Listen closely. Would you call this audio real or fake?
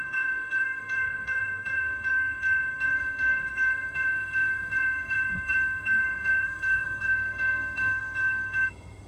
fake